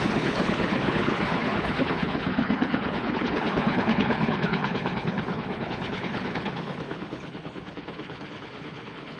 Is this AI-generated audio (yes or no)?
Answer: yes